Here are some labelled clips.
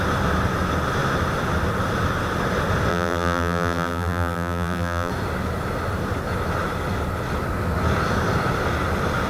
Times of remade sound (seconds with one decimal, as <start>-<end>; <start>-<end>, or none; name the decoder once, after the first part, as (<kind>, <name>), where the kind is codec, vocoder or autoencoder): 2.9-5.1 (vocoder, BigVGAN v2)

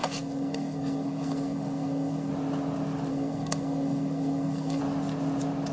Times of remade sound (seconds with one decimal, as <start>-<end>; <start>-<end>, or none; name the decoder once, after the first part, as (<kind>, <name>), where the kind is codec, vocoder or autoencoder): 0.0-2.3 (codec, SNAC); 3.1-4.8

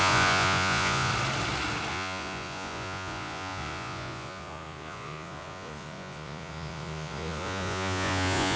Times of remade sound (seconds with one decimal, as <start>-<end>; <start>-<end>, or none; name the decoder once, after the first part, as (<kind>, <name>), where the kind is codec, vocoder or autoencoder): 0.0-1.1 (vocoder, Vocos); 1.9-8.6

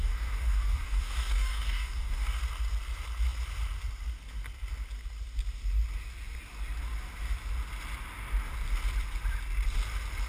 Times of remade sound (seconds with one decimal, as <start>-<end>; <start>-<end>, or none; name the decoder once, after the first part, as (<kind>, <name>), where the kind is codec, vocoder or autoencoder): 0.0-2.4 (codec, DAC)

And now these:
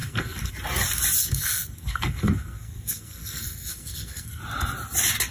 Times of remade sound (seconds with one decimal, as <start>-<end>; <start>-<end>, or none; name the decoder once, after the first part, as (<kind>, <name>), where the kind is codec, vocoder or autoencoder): 0.0-0.5 (codec, SNAC); 1.2-4.4

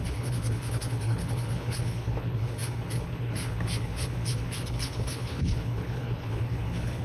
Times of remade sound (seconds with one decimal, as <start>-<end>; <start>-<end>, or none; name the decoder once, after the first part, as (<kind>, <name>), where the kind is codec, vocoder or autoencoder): 0.0-7.0 (codec, HILCodec)

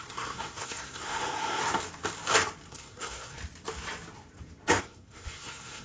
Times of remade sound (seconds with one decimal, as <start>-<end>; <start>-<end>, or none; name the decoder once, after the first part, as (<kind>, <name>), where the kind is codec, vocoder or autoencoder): 0.0-1.6 (codec, SNAC); 2.7-3.4; 4.8-5.8

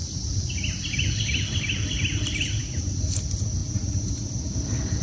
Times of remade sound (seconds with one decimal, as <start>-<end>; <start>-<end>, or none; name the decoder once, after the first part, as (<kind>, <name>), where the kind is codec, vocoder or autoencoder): 0.0-3.0 (vocoder, BigVGAN v2)